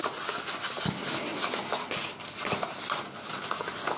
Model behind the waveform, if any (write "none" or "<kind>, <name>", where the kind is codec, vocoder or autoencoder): none